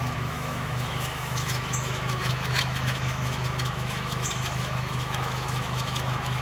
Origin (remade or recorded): remade